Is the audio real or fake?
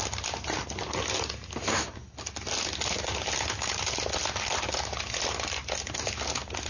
real